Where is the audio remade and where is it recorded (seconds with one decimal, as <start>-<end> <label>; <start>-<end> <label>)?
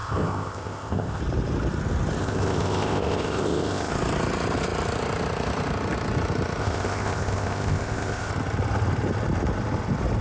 0.0-1.2 remade; 1.2-2.2 recorded; 2.2-3.9 remade; 3.9-6.6 recorded; 6.6-8.3 remade; 8.3-10.2 recorded